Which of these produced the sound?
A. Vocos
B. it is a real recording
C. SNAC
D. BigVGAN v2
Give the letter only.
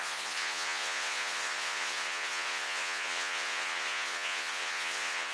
A